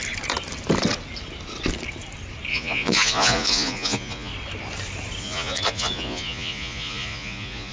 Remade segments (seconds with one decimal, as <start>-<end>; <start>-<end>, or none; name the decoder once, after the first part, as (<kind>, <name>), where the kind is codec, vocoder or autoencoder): 2.5-4.3 (vocoder, Vocos); 5.2-7.7